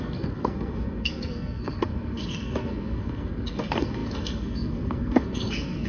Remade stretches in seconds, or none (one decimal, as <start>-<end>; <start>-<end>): 0.0-5.9